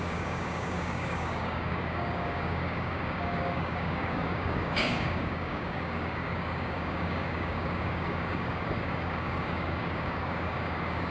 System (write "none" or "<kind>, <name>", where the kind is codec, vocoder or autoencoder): codec, DAC